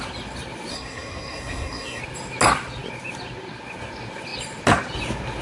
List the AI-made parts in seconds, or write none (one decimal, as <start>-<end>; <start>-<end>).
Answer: 0.7-2.0